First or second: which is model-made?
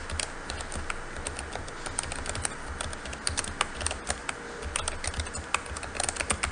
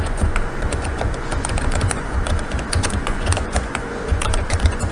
second